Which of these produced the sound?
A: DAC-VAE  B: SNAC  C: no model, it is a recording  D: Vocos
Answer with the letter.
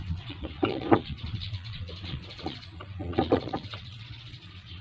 D